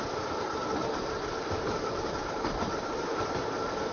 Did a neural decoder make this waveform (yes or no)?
yes